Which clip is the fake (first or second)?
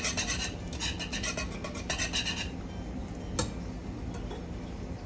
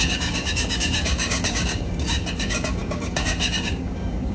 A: second